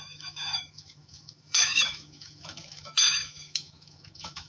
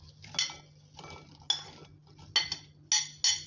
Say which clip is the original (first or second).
second